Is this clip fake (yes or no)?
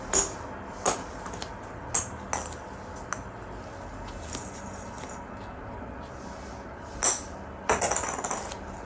no